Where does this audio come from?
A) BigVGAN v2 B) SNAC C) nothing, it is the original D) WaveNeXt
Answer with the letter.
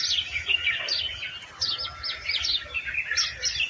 C